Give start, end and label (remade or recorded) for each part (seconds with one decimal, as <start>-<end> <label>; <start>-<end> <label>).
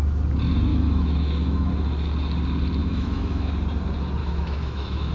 0.0-0.7 recorded; 0.7-1.7 remade; 1.7-2.8 recorded; 2.8-3.5 remade; 3.5-4.2 recorded; 4.2-5.1 remade